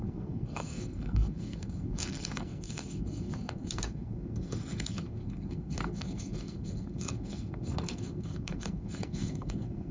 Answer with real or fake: fake